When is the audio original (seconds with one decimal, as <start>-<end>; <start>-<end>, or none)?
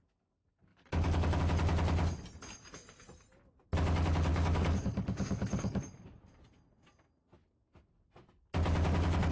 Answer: 0.0-0.7; 1.4-4.3; 5.8-9.3